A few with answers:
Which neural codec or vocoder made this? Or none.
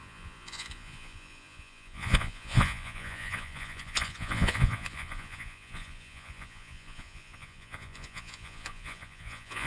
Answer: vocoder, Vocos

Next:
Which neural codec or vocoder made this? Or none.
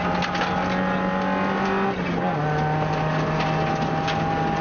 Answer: none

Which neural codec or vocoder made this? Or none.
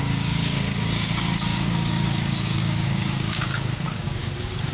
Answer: codec, DAC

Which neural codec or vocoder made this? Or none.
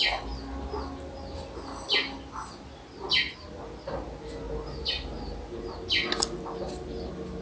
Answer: none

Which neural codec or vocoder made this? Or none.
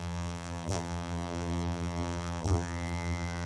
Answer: vocoder, BigVGAN v2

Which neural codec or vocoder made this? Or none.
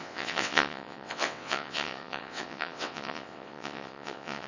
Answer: vocoder, WaveNeXt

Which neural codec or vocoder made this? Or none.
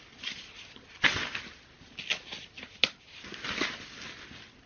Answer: none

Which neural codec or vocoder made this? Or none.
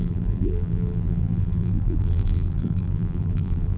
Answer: vocoder, BigVGAN v2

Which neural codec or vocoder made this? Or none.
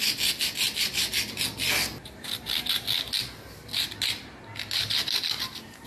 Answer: none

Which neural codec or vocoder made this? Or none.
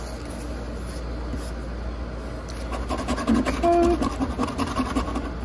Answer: none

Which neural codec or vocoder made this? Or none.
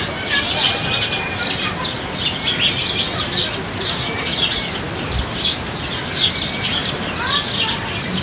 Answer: none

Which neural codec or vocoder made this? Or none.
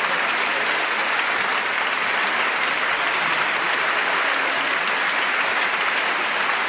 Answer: none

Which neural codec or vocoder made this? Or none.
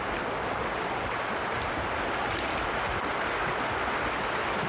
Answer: none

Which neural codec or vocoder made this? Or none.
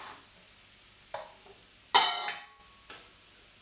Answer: none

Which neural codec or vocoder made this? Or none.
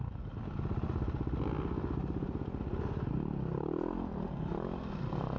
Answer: none